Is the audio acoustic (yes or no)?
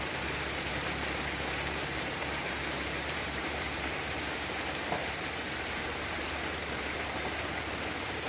no